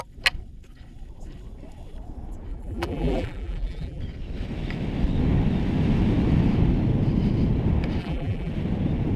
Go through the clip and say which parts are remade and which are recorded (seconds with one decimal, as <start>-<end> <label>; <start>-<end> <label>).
0.0-2.5 recorded; 2.5-4.0 remade; 4.0-8.0 recorded; 8.0-8.5 remade; 8.5-9.2 recorded